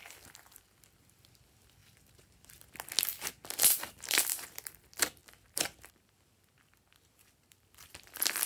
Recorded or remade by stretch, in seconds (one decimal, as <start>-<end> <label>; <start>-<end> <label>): 0.0-1.8 remade; 1.8-3.6 recorded; 3.6-8.5 remade